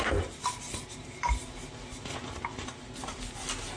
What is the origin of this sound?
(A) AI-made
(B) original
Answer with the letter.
B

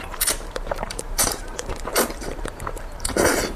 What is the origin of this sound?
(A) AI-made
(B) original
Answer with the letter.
A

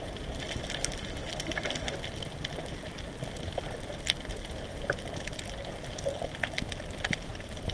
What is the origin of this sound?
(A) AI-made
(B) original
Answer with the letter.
B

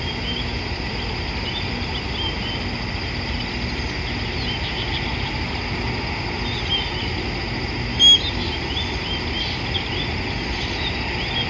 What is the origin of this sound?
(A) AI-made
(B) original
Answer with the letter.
B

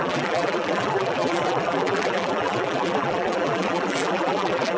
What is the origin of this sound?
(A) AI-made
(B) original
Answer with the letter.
A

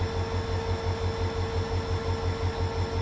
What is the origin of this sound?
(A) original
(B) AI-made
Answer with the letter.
A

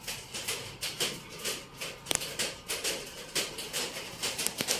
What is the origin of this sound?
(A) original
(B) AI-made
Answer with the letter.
A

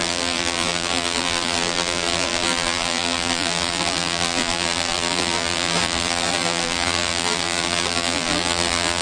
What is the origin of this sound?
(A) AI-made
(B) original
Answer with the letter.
A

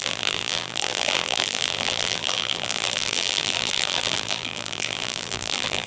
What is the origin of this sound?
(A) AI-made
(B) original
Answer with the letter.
A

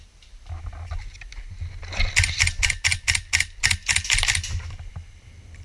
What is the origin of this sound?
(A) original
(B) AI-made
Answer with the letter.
A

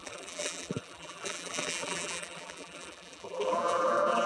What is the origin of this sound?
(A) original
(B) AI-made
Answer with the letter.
B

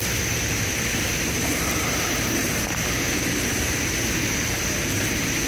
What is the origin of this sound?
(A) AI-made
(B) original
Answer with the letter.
A